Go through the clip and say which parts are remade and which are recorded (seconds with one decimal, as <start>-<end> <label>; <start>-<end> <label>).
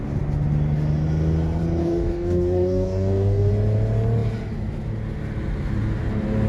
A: 0.0-1.8 recorded; 1.8-3.5 remade; 3.5-6.5 recorded